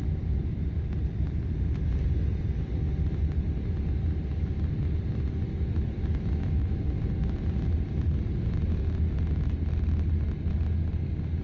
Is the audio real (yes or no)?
yes